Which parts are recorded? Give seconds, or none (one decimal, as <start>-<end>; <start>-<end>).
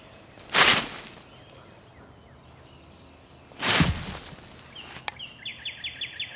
0.0-6.4